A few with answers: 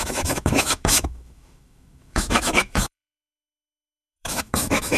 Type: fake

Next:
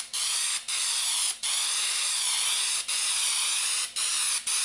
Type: real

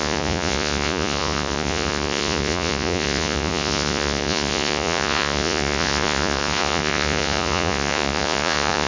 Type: fake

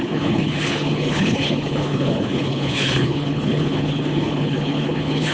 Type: fake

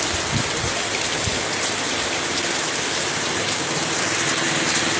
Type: real